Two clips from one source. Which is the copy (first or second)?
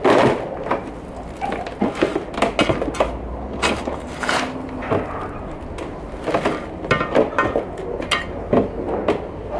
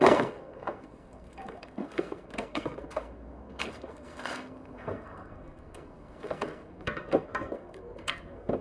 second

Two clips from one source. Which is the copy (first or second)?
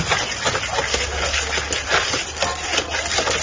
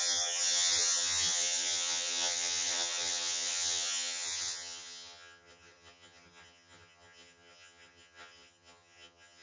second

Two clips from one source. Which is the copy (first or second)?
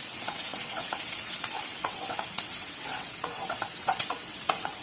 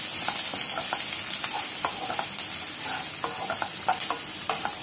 first